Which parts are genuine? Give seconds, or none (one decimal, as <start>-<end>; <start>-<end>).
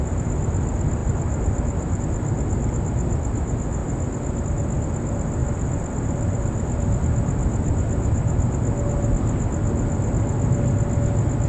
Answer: 0.0-1.0; 2.0-5.4; 6.8-11.5